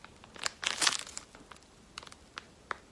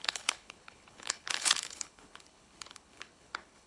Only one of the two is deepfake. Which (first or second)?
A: second